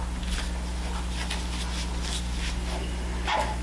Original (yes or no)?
yes